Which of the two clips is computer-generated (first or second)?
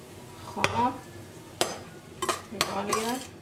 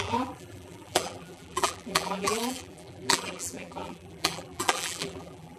second